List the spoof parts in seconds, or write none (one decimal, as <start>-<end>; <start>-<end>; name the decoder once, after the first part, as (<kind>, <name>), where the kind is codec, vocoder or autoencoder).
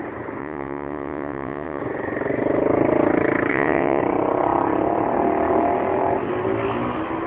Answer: 0.4-1.8 (vocoder, WaveNeXt); 3.5-4.0